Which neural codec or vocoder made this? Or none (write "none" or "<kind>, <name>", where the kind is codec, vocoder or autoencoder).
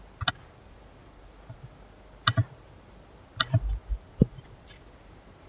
none